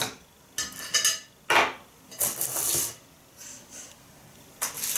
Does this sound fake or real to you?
real